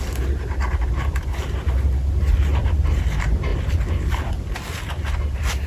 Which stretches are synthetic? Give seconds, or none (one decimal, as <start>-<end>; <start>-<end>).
2.5-3.1; 3.5-4.3